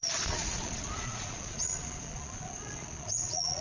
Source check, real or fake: fake